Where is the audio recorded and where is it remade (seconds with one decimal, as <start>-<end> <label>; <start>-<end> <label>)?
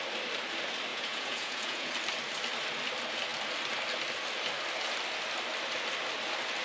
0.0-0.9 recorded; 0.9-1.9 remade; 1.9-6.6 recorded